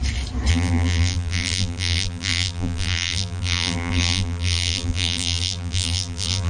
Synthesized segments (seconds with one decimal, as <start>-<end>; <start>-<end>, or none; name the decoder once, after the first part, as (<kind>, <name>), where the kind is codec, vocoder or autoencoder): 0.5-6.5 (vocoder, BigVGAN v2)